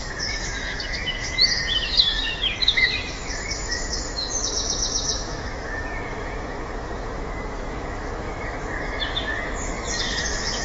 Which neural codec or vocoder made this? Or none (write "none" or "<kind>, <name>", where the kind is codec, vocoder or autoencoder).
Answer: autoencoder, DAC-VAE